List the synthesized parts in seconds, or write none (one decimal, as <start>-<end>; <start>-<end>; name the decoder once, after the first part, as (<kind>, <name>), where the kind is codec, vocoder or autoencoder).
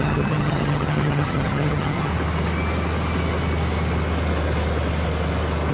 0.0-2.1 (vocoder, HiFi-GAN)